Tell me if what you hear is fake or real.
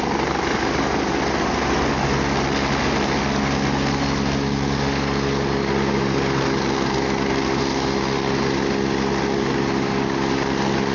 real